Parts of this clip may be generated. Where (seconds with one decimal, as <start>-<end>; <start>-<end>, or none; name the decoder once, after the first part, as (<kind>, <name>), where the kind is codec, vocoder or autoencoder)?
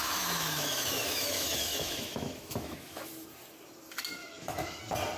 0.0-3.1 (autoencoder, DAC-VAE); 4.2-4.8